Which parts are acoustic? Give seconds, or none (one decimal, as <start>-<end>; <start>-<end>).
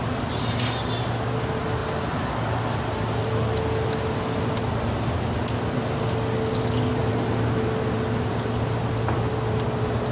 0.0-10.1